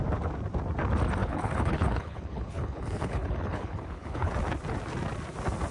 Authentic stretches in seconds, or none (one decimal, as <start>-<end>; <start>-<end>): 0.0-1.2; 4.3-5.7

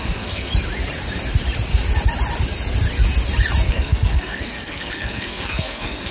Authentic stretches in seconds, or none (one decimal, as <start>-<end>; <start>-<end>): 0.5-3.7

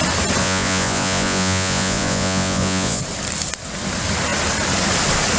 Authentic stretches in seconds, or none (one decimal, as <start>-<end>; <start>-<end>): 0.0-0.4; 3.0-5.4